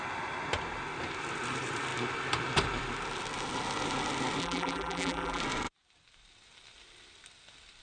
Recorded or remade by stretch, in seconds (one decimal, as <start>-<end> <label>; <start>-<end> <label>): 0.0-4.4 recorded; 4.4-5.4 remade; 5.4-7.8 recorded